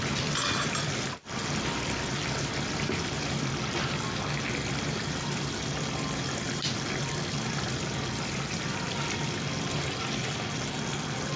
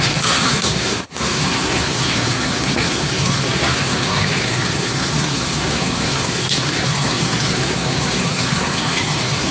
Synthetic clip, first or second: second